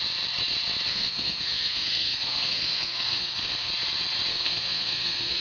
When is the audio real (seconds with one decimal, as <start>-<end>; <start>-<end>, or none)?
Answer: 0.0-0.9; 3.7-4.3